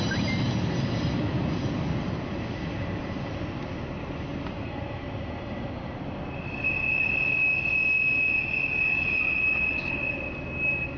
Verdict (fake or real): real